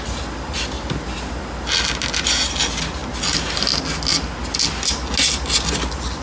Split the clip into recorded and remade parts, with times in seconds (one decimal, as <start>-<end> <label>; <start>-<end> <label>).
0.0-6.2 recorded